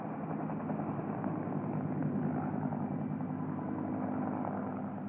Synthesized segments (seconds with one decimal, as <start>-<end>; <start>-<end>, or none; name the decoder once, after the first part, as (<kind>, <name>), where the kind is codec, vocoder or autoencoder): none